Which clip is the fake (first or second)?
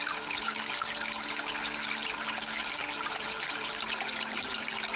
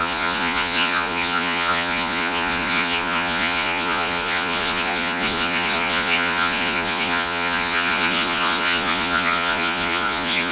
second